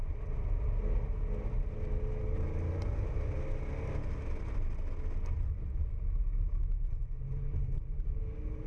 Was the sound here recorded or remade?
recorded